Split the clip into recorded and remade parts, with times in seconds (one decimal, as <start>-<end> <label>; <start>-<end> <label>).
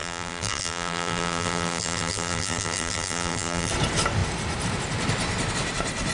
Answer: 0.0-3.7 remade; 3.7-6.1 recorded